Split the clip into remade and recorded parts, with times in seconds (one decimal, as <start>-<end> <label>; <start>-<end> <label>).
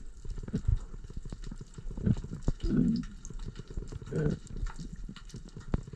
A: 0.0-6.0 recorded